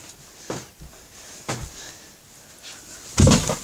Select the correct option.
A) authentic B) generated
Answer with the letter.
A